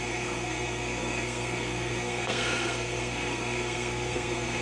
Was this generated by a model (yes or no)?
yes